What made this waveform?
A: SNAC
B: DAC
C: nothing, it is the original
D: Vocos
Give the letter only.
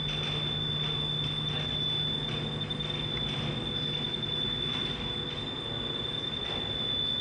C